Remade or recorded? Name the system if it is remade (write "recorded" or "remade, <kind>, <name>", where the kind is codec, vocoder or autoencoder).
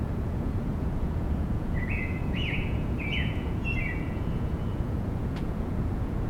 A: remade, vocoder, Vocos